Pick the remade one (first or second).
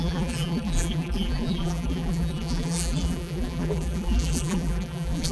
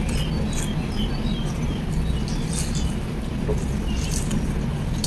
first